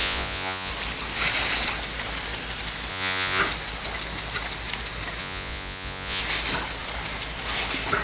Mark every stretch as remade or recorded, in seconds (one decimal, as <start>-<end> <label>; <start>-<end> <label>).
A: 0.0-0.7 remade; 0.7-2.9 recorded; 2.9-3.4 remade; 3.4-5.2 recorded; 5.2-6.2 remade; 6.2-8.0 recorded